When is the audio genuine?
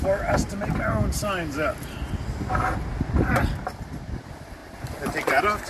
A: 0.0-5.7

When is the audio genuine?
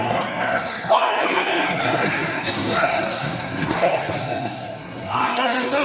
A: none